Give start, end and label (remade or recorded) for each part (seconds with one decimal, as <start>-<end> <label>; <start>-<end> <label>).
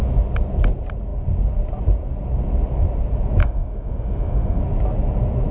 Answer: 0.0-3.4 recorded; 3.4-4.6 remade; 4.6-5.5 recorded